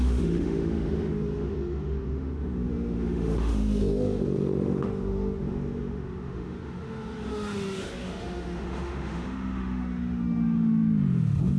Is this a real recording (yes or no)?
no